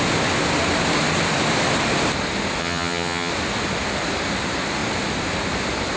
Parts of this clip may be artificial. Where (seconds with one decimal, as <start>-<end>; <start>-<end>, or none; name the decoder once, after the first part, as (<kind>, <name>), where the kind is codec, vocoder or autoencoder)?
2.6-3.3 (vocoder, HiFi-GAN)